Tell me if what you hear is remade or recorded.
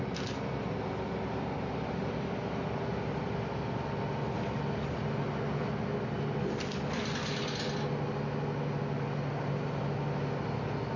recorded